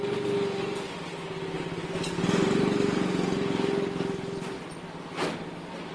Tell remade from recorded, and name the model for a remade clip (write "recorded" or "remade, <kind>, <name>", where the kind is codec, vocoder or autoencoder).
recorded